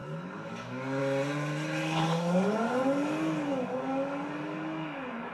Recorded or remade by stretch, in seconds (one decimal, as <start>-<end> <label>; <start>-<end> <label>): 0.0-1.0 remade; 1.0-1.8 recorded; 1.8-2.8 remade; 2.8-3.5 recorded; 3.5-5.3 remade